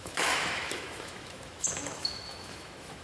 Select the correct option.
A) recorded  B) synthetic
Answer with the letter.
B